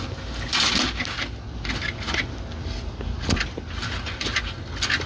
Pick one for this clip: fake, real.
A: real